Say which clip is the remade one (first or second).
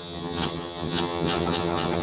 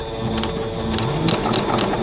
first